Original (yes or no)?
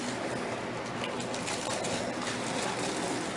yes